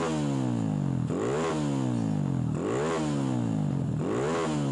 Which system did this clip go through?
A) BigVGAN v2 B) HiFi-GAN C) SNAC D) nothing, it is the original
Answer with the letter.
D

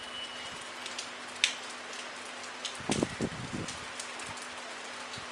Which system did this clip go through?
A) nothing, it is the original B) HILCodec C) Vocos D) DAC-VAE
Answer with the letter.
A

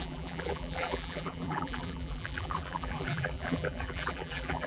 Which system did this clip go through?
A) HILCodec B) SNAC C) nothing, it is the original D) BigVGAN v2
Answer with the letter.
D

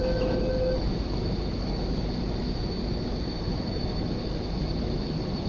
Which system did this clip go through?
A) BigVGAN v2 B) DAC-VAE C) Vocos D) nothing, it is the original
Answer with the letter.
B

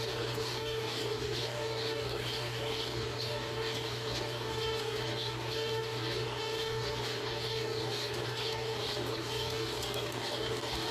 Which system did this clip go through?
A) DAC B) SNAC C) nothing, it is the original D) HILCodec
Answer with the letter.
A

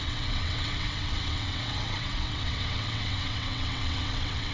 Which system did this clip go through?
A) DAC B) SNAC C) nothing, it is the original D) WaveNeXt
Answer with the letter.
D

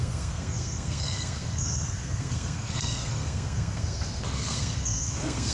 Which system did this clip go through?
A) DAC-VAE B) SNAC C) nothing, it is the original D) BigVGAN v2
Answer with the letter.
B